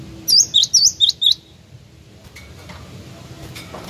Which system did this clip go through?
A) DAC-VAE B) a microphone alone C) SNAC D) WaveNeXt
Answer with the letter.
B